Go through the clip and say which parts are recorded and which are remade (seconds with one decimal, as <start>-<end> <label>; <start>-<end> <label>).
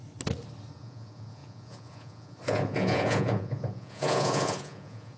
0.0-0.8 recorded; 0.8-5.2 remade